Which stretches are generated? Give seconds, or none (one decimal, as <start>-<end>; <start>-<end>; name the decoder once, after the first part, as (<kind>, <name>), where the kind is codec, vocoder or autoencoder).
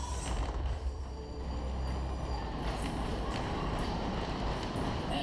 0.0-1.0 (vocoder, BigVGAN v2); 3.1-5.2